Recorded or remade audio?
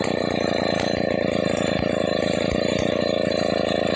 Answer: recorded